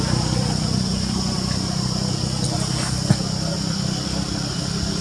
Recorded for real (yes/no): yes